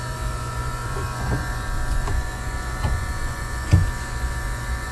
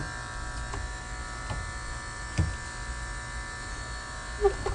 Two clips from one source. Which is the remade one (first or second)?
first